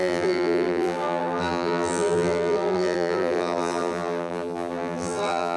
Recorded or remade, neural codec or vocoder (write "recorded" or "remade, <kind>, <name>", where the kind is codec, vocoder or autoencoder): remade, vocoder, BigVGAN v2